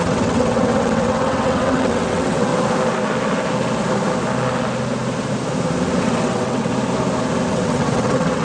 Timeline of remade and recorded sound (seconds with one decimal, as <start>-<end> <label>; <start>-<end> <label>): 0.0-2.5 remade; 2.5-6.0 recorded; 6.0-6.7 remade; 6.7-7.5 recorded; 7.5-8.4 remade